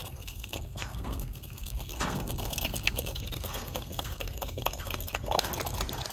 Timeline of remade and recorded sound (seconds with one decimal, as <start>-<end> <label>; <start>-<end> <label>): 0.0-5.5 remade; 5.5-6.1 recorded